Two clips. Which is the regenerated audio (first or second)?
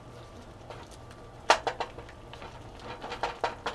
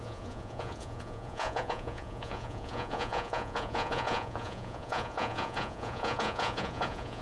second